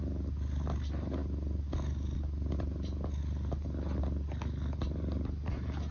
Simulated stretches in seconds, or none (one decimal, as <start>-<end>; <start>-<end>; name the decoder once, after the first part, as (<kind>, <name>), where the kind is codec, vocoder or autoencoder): none